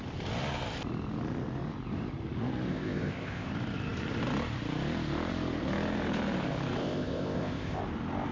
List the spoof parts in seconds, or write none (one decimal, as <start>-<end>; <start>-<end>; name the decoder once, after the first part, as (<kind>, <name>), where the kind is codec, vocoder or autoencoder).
2.7-3.5 (codec, ZipCodec); 6.8-7.8